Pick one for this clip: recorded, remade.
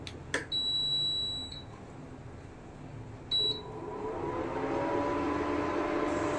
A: recorded